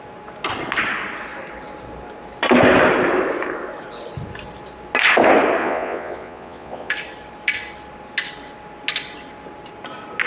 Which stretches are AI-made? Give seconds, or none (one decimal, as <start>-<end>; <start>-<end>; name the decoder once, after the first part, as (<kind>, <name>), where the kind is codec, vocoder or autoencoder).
5.6-6.9 (vocoder, Vocos)